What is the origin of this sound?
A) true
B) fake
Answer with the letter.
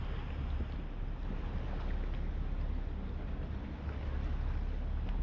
A